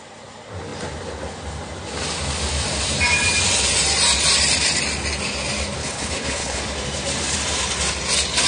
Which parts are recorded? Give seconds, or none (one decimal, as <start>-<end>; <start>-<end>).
0.0-5.8; 6.6-8.5